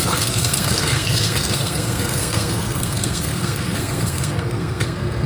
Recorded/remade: remade